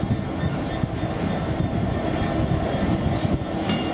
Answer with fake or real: real